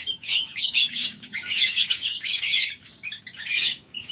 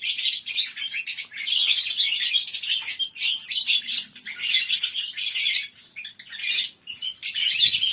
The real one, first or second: second